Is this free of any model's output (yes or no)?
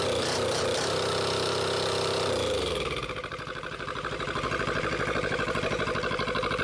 no